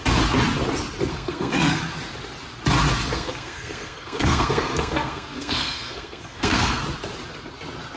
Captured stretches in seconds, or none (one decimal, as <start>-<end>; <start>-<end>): 0.0-1.1; 1.8-3.1; 6.8-8.0